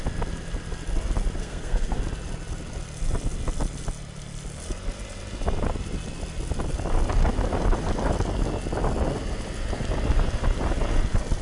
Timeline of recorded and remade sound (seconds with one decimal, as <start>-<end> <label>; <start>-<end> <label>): 0.0-1.4 recorded; 1.4-2.0 remade; 2.0-11.4 recorded